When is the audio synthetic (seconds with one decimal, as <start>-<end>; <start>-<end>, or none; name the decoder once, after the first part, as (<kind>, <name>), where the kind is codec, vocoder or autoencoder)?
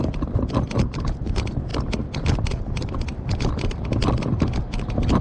none